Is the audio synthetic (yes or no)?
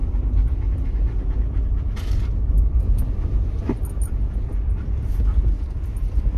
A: no